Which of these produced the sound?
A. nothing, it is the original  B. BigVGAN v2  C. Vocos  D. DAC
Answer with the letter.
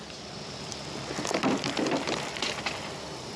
A